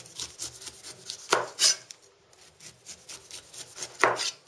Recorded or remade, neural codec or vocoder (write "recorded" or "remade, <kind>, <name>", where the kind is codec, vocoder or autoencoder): recorded